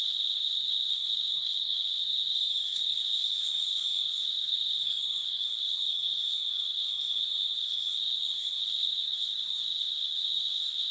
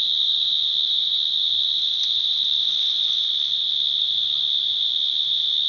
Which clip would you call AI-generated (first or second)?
first